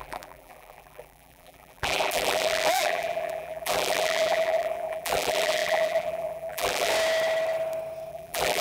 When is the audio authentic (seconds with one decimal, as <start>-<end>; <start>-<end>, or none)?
6.9-8.1